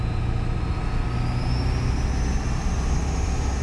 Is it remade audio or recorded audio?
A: recorded